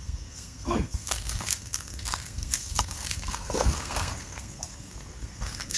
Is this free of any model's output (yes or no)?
no